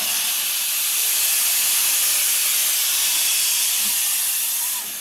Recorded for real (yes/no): yes